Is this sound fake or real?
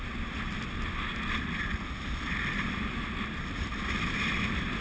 real